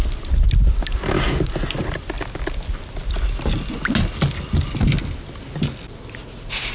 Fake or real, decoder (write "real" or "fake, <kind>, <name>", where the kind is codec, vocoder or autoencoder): real